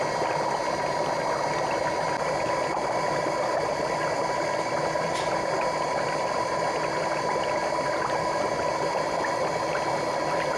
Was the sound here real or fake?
real